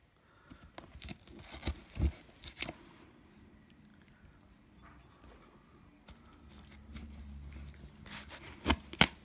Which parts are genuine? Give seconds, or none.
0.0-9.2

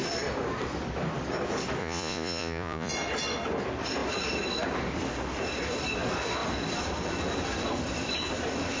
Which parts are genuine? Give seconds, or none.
0.0-1.8; 2.9-8.8

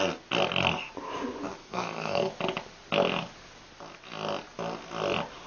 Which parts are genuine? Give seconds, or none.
0.0-1.6; 2.3-5.5